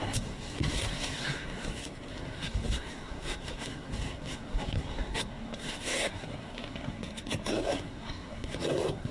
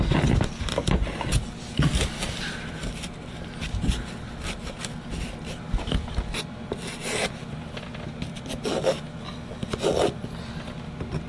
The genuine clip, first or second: second